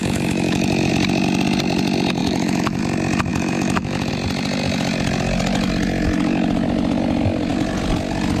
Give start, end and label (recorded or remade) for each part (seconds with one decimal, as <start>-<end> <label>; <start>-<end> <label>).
0.0-0.9 remade; 0.9-2.2 recorded; 2.2-2.8 remade; 2.8-3.3 recorded; 3.3-4.1 remade; 4.1-8.4 recorded